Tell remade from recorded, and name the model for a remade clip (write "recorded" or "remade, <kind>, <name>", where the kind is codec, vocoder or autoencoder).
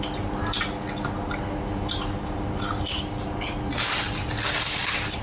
recorded